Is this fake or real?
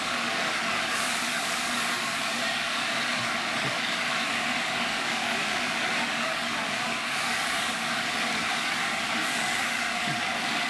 fake